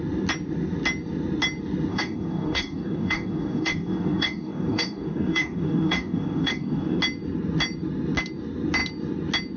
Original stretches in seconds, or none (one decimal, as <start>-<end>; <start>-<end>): 0.0-1.9; 7.0-9.6